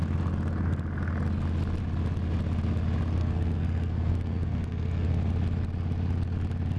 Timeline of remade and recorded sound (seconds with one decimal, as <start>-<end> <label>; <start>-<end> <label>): 0.0-3.2 recorded; 3.2-5.1 remade; 5.1-6.8 recorded

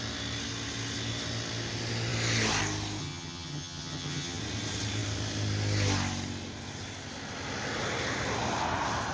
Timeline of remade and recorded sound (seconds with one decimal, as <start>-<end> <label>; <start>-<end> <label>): 0.0-3.0 recorded; 3.0-4.4 remade; 4.4-9.1 recorded

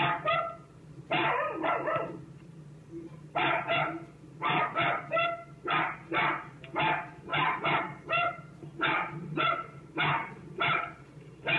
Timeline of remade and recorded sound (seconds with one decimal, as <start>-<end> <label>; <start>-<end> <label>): 0.0-0.7 recorded; 0.7-3.6 remade; 3.6-7.3 recorded; 7.3-10.8 remade; 10.8-11.6 recorded

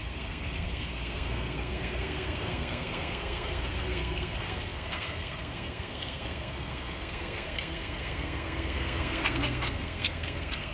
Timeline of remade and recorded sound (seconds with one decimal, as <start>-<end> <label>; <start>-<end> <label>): 0.0-10.7 remade

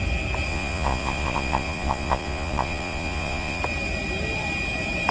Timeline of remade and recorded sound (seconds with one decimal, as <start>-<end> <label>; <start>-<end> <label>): 0.0-0.5 recorded; 0.5-3.6 remade; 3.6-5.1 recorded

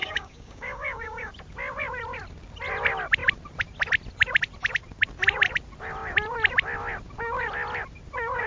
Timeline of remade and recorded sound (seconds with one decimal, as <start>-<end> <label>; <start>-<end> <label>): 0.0-1.3 remade; 1.3-8.5 recorded